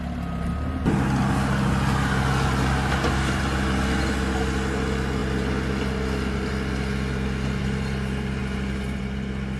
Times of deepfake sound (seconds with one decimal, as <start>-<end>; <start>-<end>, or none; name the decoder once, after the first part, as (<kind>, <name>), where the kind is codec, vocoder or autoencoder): none